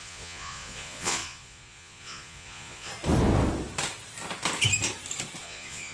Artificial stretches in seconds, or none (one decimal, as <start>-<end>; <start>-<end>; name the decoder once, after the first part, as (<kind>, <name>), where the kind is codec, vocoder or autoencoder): 0.0-2.9 (vocoder, Vocos); 5.4-5.9